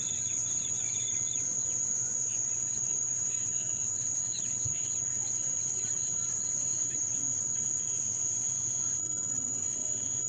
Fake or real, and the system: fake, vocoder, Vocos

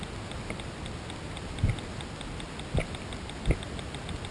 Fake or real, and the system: real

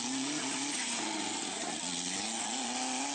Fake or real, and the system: real